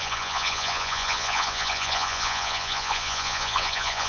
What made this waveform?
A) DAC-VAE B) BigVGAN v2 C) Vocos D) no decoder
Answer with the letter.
C